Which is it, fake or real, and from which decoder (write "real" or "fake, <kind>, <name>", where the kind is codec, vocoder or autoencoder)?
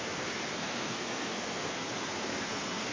fake, codec, SNAC